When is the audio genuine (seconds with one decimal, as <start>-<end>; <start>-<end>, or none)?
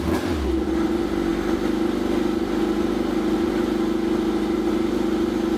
0.0-5.6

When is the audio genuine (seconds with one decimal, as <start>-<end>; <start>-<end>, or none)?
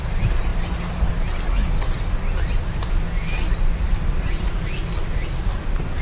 0.0-6.0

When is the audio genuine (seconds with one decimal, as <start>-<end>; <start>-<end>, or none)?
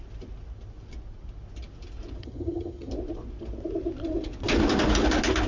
0.0-2.2; 2.9-5.5